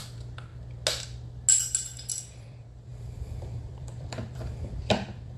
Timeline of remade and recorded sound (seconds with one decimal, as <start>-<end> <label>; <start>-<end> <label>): 0.0-0.5 remade; 0.5-2.2 recorded; 2.2-5.4 remade